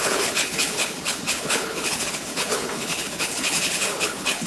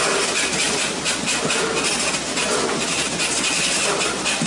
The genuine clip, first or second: second